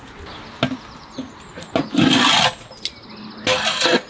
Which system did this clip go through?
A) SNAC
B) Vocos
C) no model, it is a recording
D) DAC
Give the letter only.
C